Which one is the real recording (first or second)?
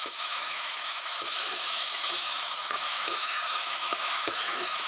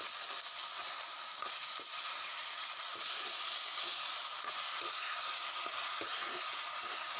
second